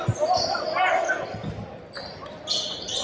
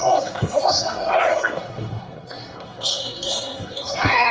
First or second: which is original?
first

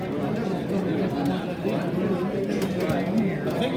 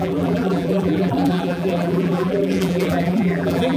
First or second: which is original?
first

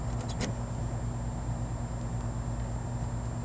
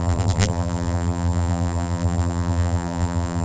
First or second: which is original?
first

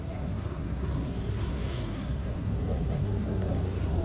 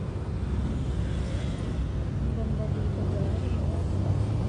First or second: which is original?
second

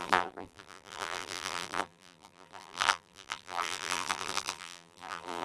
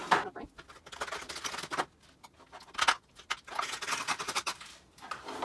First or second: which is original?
second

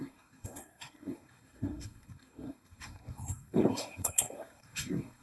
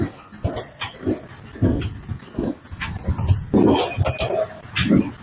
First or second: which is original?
second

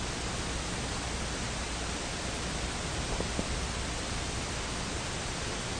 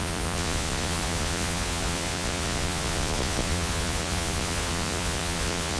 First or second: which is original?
first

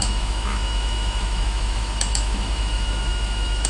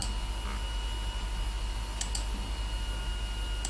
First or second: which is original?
second